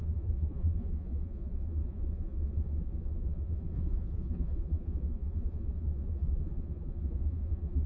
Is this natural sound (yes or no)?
no